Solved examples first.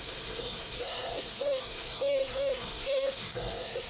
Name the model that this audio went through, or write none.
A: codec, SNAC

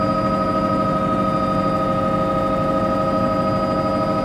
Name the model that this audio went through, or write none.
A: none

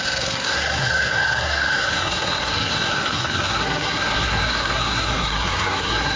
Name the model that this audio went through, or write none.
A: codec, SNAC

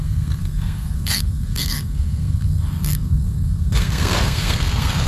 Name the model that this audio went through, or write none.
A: codec, SNAC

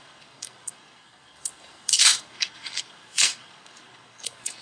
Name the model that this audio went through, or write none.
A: codec, SNAC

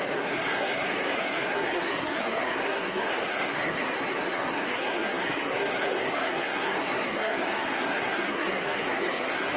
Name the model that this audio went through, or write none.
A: codec, SNAC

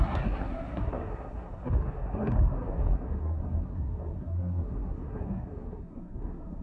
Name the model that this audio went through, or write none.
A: codec, SNAC